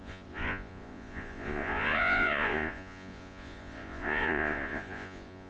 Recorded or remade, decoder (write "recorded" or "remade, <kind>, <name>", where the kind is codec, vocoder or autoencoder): remade, vocoder, Vocos